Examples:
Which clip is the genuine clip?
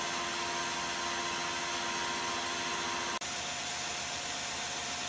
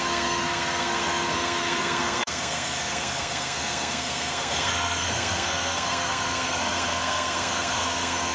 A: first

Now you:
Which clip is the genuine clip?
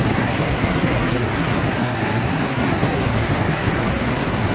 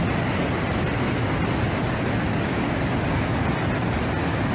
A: second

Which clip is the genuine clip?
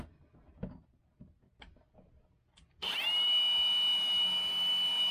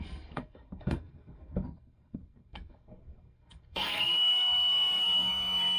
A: first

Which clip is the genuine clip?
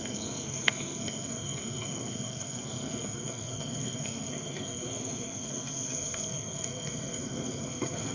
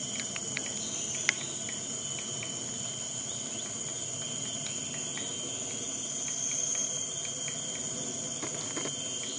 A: second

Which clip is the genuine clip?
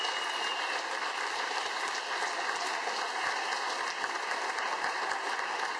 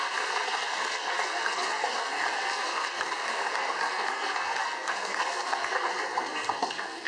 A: first